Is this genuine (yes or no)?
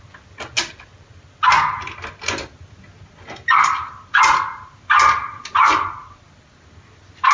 yes